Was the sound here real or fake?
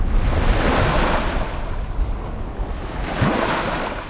real